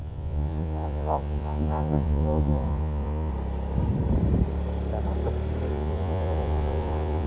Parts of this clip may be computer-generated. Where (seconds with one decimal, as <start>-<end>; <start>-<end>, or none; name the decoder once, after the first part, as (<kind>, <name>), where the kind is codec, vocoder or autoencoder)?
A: 0.0-3.3 (vocoder, Vocos); 5.7-7.3